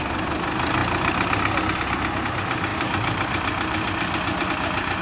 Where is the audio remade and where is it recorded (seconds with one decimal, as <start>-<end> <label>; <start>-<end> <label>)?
0.0-5.0 recorded